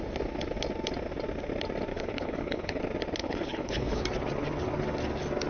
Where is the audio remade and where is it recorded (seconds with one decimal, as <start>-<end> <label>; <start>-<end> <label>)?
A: 0.0-1.9 recorded; 1.9-2.8 remade; 2.8-3.2 recorded; 3.2-4.0 remade; 4.0-5.5 recorded